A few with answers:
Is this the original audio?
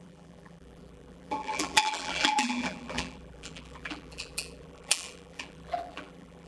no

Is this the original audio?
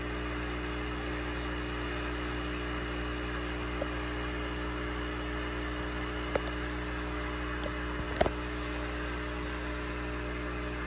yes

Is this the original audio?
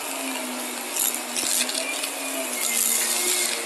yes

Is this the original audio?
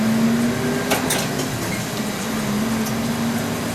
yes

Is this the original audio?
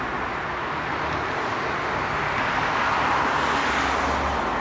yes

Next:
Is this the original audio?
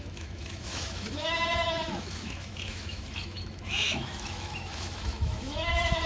no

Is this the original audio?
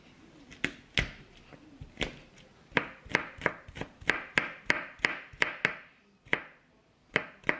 yes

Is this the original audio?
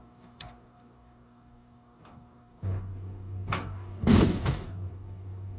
no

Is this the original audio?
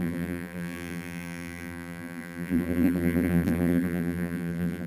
no